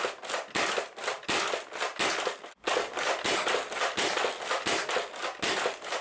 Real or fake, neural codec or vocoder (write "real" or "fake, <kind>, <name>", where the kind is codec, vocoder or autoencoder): real